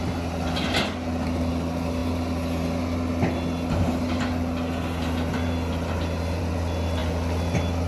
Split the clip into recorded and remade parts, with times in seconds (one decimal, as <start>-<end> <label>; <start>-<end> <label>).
0.0-7.9 recorded